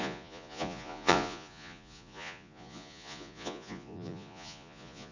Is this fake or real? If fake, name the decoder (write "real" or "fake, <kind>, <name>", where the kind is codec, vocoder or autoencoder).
fake, vocoder, Vocos